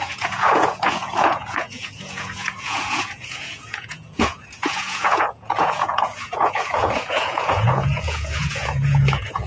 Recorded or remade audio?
remade